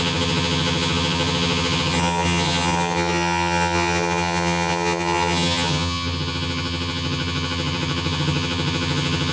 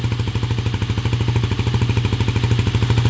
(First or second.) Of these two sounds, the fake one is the first